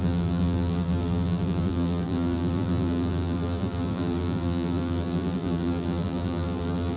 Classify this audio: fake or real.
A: fake